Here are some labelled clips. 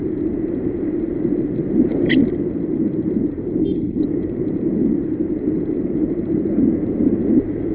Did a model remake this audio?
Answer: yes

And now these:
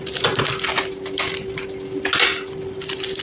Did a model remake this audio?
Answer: no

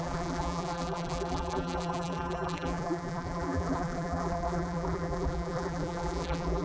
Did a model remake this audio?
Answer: yes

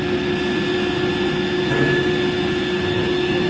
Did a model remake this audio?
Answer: no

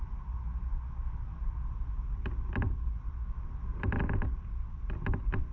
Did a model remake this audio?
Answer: no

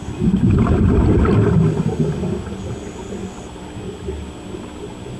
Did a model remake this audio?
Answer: no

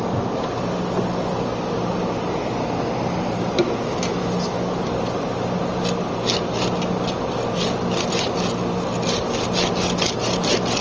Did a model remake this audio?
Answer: no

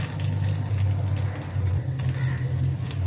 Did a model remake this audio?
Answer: no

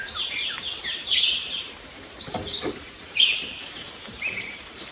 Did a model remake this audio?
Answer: yes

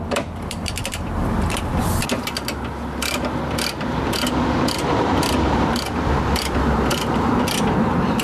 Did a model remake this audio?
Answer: yes